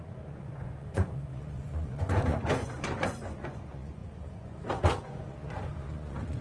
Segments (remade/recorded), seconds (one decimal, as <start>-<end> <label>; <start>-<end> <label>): 0.0-6.4 remade